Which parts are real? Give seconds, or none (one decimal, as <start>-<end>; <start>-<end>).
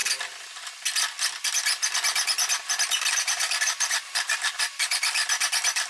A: 0.0-3.1; 5.2-5.9